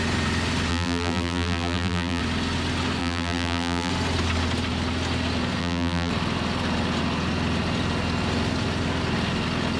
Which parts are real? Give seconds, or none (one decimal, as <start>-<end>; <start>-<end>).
0.0-0.7; 2.2-3.0; 3.9-5.6; 6.1-9.8